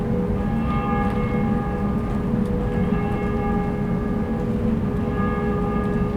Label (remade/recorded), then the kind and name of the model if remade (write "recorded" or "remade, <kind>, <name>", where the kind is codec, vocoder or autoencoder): recorded